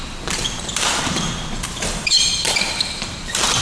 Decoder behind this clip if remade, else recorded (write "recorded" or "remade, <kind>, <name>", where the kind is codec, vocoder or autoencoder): remade, vocoder, BigVGAN v2